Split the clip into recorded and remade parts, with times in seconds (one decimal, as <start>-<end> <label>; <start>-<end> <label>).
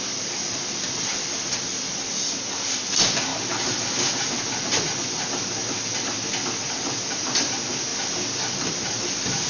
0.0-9.5 recorded